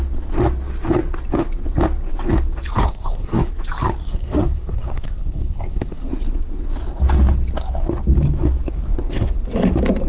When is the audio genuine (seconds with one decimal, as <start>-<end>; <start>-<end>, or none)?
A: 0.0-2.8; 3.5-4.0; 6.1-10.1